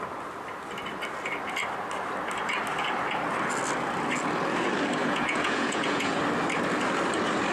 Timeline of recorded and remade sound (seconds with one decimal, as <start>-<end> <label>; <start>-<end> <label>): 0.0-5.0 recorded; 5.0-6.2 remade; 6.2-7.5 recorded